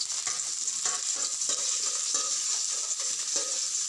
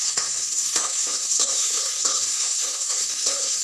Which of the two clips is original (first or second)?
first